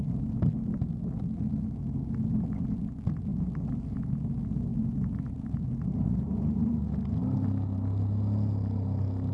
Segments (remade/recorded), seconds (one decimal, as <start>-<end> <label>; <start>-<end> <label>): 0.0-4.7 recorded; 4.7-6.9 remade; 6.9-9.3 recorded